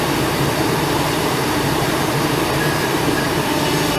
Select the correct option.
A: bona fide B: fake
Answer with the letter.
B